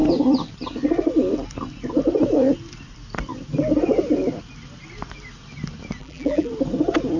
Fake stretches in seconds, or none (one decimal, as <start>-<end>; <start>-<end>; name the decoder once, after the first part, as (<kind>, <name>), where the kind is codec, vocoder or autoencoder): 6.0-6.5 (vocoder, BigVGAN v2)